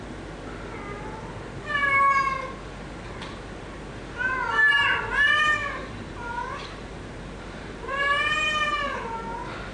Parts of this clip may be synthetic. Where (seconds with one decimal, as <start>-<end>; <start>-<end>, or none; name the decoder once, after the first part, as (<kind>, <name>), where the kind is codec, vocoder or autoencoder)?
5.6-8.5 (vocoder, BigVGAN v2)